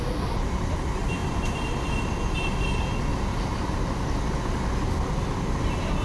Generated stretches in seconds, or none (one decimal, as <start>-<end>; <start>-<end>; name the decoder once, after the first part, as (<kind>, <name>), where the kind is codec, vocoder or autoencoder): 1.2-1.8 (vocoder, BigVGAN v2); 3.1-3.9

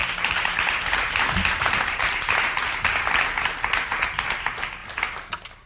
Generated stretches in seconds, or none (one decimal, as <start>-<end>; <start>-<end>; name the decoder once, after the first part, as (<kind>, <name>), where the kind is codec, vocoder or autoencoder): none